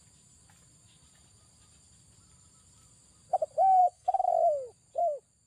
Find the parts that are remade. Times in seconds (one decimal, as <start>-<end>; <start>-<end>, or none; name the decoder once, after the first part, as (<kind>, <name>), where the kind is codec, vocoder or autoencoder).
3.8-4.3 (codec, SNAC)